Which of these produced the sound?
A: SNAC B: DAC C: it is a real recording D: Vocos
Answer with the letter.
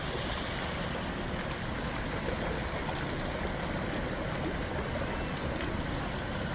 C